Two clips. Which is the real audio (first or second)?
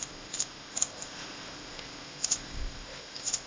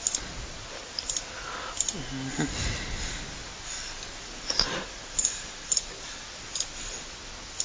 second